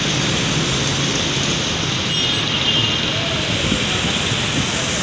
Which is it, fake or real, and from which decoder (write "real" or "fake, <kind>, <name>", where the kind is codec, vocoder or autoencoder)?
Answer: real